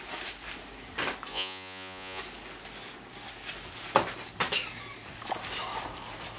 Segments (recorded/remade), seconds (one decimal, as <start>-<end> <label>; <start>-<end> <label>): 0.0-1.3 recorded; 1.3-2.2 remade; 2.2-6.4 recorded